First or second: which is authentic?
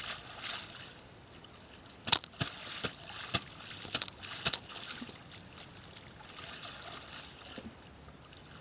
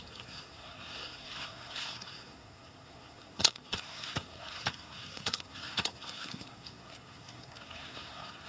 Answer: first